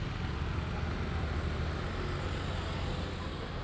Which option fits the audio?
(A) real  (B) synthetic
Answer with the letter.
A